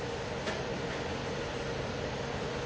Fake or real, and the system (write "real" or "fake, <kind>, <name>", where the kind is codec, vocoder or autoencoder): real